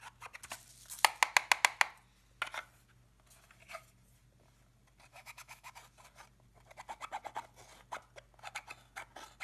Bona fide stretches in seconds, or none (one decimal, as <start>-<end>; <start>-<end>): 0.0-5.1; 5.7-9.4